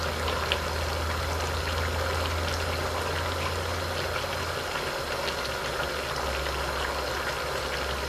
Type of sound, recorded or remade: recorded